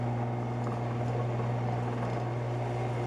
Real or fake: real